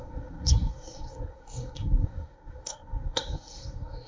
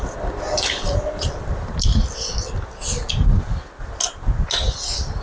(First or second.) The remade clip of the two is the first